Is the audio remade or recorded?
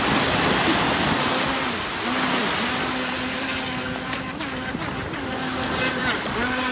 recorded